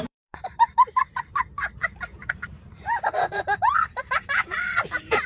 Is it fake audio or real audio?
fake